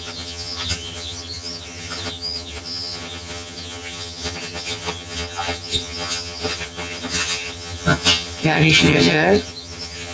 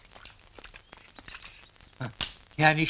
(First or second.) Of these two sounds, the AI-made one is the first